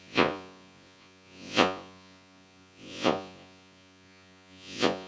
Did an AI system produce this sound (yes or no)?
yes